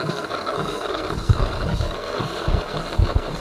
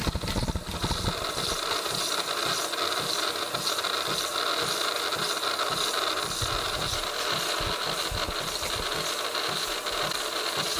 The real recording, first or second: second